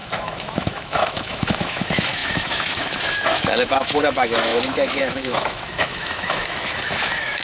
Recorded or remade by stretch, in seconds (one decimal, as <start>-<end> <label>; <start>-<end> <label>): 0.0-7.4 remade